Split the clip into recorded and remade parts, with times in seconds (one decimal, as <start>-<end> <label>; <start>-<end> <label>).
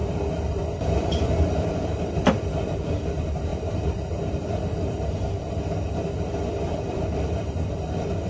0.0-8.3 remade